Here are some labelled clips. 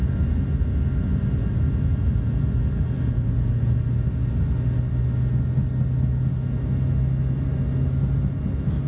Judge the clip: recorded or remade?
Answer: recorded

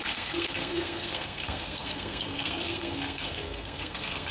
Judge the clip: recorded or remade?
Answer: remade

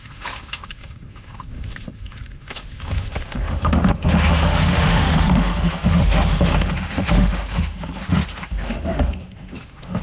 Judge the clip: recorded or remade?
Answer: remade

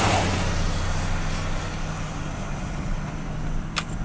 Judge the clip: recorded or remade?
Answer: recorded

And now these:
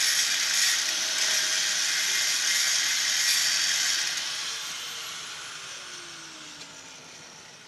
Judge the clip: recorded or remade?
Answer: recorded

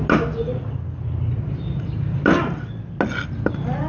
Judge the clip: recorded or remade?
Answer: recorded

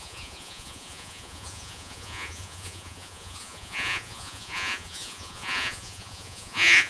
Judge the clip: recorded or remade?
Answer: remade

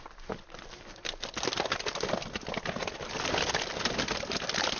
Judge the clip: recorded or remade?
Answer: recorded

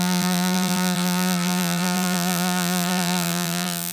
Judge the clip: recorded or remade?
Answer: remade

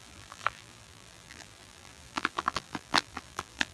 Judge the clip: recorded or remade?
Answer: remade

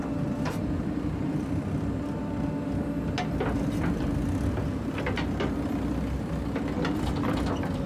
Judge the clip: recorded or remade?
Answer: recorded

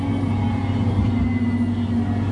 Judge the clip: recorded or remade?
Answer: recorded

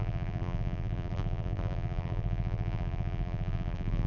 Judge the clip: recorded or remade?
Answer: remade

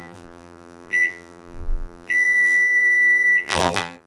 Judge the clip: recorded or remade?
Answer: remade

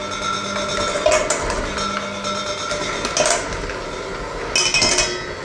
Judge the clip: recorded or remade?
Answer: recorded